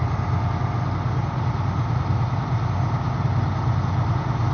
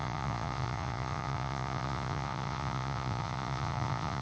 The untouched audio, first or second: first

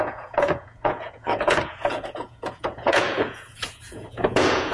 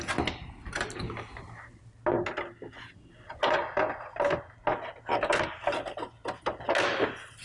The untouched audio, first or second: second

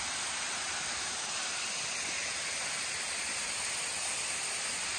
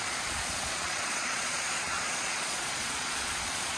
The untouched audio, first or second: first